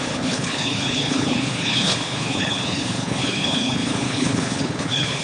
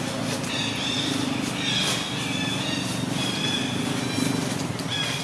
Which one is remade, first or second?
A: first